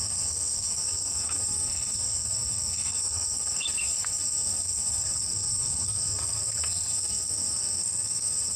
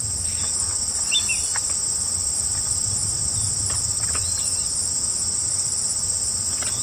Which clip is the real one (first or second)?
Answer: second